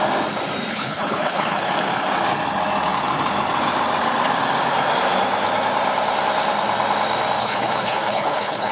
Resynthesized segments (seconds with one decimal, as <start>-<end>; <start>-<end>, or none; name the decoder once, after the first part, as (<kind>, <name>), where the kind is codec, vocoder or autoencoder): 0.7-1.7 (codec, HILCodec); 7.4-8.7